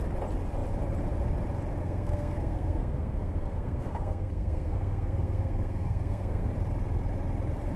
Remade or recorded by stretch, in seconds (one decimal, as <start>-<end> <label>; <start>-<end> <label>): 0.0-1.8 recorded; 1.8-6.5 remade; 6.5-7.8 recorded

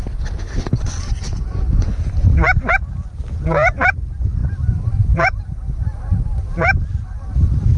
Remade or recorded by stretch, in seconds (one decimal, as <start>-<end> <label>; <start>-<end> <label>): 0.0-4.4 recorded; 4.4-5.4 remade; 5.4-7.8 recorded

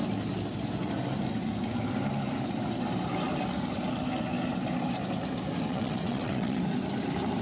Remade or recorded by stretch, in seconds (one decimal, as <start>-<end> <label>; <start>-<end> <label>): 0.0-5.7 recorded; 5.7-6.6 remade; 6.6-7.4 recorded

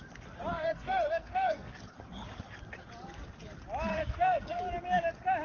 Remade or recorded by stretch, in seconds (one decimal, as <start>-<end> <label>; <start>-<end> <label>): 0.0-0.5 recorded; 0.5-1.7 remade; 1.7-3.9 recorded; 3.9-4.6 remade; 4.6-5.4 recorded

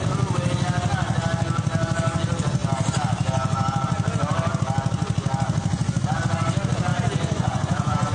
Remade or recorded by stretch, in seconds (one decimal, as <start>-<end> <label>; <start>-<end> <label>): 0.0-6.9 recorded; 6.9-8.1 remade

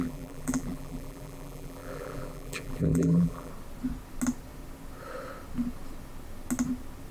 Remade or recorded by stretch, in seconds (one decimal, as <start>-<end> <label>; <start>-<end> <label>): 0.0-3.5 remade; 3.5-7.1 recorded

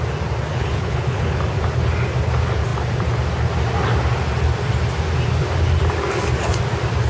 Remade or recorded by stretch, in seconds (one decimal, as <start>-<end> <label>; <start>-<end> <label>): 0.0-0.5 recorded; 0.5-1.4 remade; 1.4-7.1 recorded

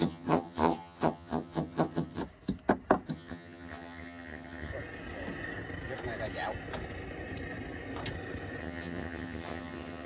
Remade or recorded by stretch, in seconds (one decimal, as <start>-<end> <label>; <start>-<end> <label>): 0.0-2.2 remade; 2.2-3.1 recorded; 3.1-4.7 remade; 4.7-8.6 recorded; 8.6-10.1 remade